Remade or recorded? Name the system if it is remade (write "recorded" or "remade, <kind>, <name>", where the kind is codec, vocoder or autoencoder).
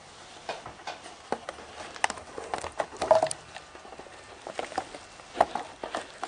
recorded